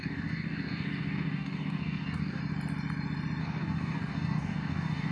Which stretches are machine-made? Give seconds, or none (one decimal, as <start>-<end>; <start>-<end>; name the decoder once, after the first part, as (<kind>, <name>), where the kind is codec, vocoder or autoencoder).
0.0-2.4 (codec, DAC); 3.4-5.1